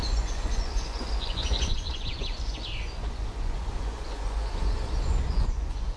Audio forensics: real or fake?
fake